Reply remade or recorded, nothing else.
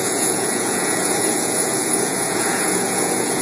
remade